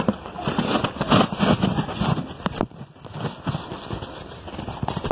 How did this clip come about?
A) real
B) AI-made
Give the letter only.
A